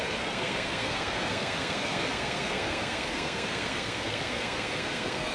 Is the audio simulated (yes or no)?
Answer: yes